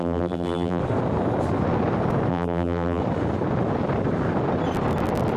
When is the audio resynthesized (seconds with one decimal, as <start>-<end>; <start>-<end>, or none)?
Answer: 0.0-0.8; 2.3-3.0